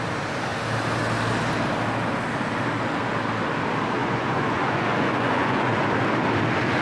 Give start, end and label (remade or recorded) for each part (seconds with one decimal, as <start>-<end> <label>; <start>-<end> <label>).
0.0-4.0 recorded; 4.0-5.9 remade; 5.9-6.8 recorded